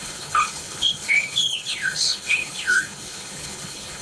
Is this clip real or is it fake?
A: fake